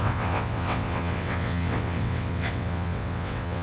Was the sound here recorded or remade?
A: remade